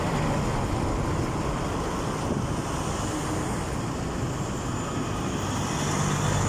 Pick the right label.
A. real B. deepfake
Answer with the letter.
A